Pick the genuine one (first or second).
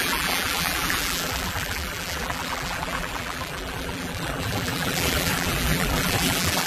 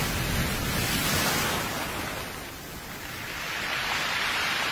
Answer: second